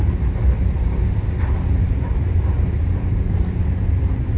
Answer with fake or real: fake